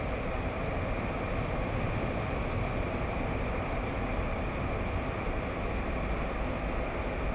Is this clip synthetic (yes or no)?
no